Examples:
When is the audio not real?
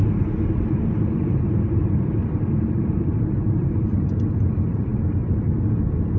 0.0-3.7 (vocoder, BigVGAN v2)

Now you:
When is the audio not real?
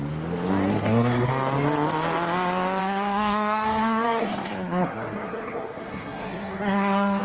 0.7-1.3 (codec, SNAC); 2.8-7.2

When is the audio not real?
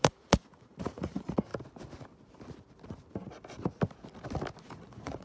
0.0-1.5 (vocoder, Vocos); 4.6-5.2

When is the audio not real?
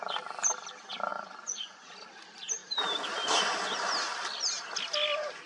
1.1-1.9 (vocoder, Vocos)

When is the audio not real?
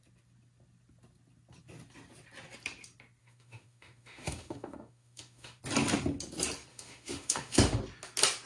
3.2-5.6 (autoencoder, DAC-VAE); 6.7-7.8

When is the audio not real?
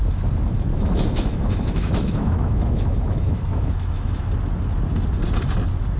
0.7-4.3 (autoencoder, DAC-VAE)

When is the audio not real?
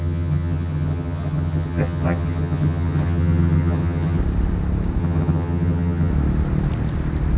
0.0-4.2 (vocoder, HiFi-GAN); 5.0-6.1